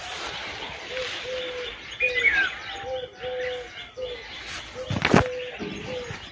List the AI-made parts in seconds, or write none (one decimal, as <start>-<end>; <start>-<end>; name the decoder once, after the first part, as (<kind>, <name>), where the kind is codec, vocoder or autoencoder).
none